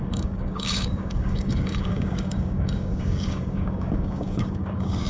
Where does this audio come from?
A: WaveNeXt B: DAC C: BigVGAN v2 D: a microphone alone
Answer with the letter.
B